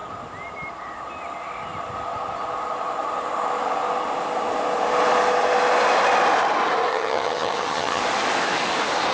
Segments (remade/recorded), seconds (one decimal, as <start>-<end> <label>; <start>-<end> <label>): 0.0-6.9 recorded; 6.9-8.0 remade; 8.0-9.1 recorded